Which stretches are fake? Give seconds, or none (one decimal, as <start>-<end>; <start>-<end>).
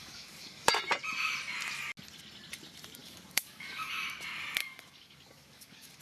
0.0-0.8; 3.0-3.9; 4.6-6.0